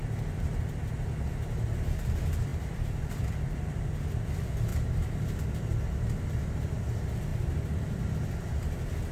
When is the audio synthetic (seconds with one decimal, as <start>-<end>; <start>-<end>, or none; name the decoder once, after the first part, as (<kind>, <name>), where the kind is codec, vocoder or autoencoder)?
2.5-3.8 (vocoder, BigVGAN v2); 7.3-8.0